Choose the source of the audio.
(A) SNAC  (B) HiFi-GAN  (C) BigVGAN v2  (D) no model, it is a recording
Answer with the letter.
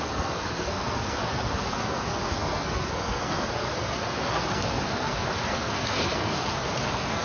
A